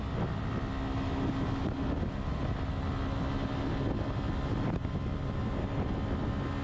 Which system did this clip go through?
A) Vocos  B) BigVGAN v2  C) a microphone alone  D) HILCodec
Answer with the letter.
C